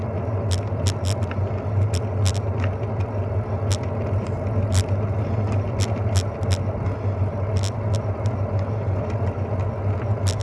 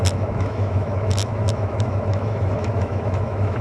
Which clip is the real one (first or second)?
first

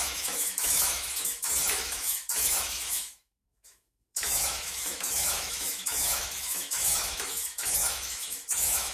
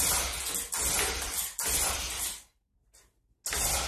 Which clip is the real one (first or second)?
second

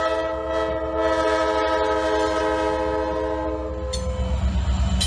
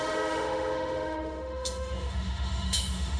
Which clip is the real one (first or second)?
first